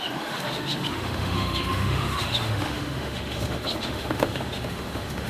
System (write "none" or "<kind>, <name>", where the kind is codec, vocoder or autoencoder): autoencoder, DAC-VAE